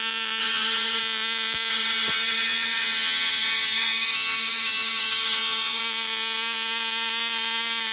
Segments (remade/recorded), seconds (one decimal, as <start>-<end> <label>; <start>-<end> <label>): 0.0-0.4 recorded; 0.4-1.0 remade; 1.0-1.7 recorded; 1.7-5.8 remade; 5.8-7.9 recorded